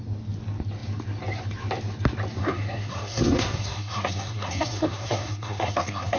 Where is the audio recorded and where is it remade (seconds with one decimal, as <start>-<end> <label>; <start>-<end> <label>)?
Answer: 0.0-2.4 recorded; 2.4-6.2 remade